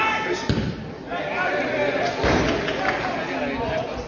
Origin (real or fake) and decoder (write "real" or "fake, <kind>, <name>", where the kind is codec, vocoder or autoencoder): real